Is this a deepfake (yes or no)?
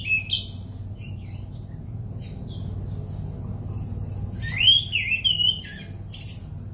no